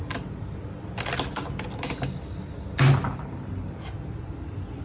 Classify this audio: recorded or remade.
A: recorded